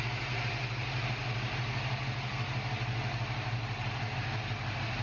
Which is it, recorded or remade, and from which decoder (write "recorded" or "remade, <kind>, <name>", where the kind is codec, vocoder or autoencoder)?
recorded